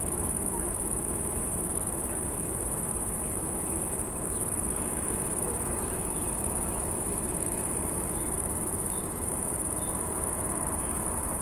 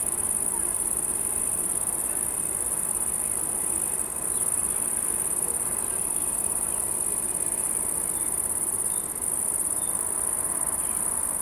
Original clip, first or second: second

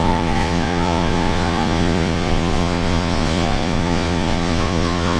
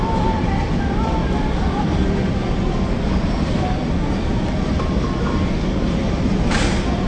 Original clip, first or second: second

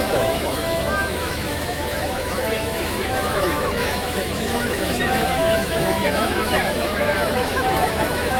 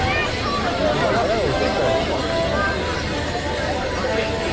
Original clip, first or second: second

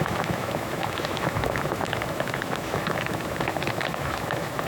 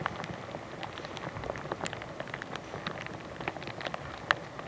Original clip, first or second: second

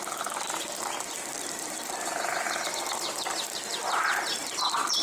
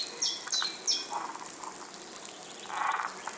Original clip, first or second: second